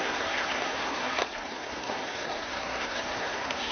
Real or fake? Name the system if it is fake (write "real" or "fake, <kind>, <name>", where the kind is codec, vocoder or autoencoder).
fake, codec, SNAC